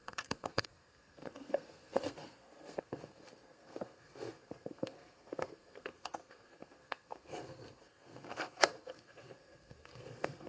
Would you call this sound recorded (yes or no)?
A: no